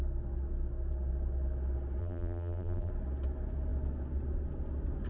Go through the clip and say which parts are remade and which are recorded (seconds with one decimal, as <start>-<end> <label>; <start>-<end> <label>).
0.0-2.0 recorded; 2.0-2.9 remade; 2.9-5.1 recorded